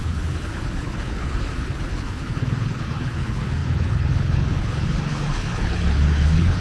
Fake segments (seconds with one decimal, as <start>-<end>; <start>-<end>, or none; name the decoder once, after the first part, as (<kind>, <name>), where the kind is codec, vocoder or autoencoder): 0.0-6.6 (codec, HILCodec)